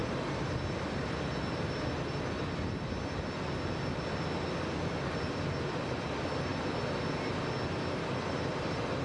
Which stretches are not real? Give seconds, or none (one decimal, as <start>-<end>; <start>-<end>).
none